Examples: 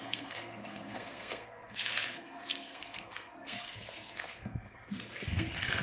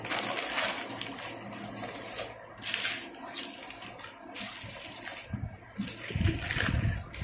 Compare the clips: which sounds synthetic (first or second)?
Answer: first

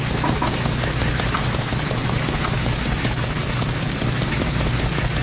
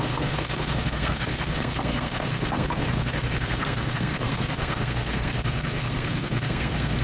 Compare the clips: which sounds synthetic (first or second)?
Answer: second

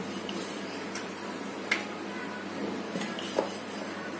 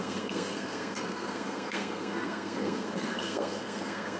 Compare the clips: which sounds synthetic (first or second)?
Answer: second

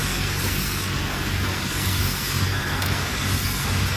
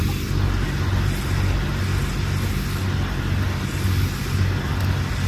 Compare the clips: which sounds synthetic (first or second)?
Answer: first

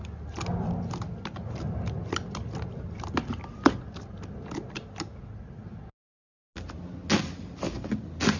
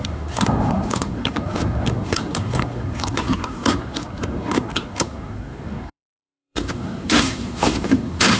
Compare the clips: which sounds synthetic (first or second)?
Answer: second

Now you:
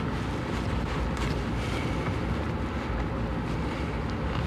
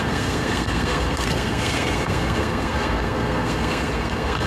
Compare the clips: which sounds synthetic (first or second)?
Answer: second